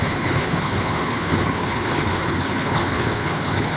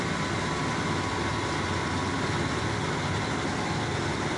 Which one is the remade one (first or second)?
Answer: first